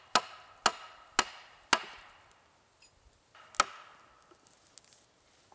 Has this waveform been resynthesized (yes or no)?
no